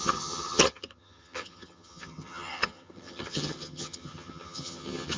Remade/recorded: remade